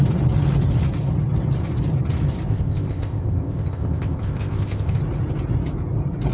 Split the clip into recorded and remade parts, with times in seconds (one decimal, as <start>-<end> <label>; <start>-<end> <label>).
0.0-2.5 recorded; 2.5-5.0 remade; 5.0-6.3 recorded